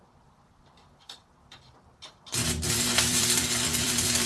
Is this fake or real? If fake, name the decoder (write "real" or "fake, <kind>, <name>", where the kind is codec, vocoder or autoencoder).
fake, vocoder, BigVGAN v2